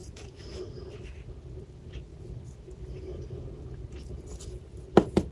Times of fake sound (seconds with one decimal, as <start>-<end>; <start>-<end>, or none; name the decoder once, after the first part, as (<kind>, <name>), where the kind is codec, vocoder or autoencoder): none